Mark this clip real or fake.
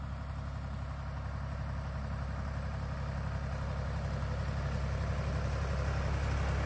real